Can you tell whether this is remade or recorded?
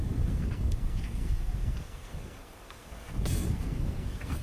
remade